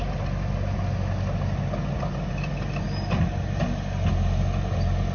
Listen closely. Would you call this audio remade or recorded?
recorded